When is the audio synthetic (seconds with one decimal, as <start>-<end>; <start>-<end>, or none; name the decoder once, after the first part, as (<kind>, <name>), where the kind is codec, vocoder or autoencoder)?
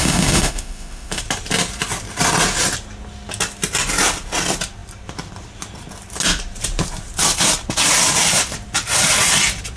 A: 0.0-1.2 (autoencoder, DAC-VAE)